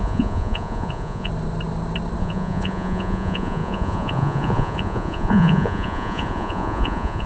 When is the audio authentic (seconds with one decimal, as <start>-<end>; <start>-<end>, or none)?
1.3-2.2